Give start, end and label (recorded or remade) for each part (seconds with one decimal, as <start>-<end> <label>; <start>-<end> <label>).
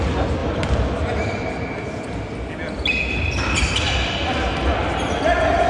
0.0-0.4 recorded; 0.4-0.9 remade; 0.9-5.7 recorded